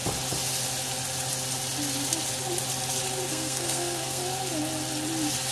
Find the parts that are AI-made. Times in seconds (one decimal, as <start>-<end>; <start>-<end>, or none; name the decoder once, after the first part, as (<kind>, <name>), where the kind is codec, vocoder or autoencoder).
3.3-4.2 (codec, SNAC)